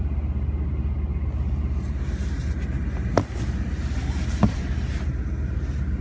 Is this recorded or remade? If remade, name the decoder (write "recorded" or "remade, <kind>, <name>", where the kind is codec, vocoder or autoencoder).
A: recorded